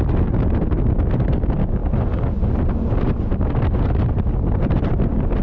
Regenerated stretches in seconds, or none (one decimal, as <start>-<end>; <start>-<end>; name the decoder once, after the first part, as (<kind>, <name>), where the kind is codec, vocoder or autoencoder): none